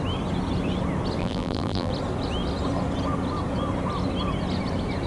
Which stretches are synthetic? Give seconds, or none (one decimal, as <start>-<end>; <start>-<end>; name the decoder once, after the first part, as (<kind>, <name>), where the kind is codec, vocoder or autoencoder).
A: 1.2-1.9 (vocoder, BigVGAN v2)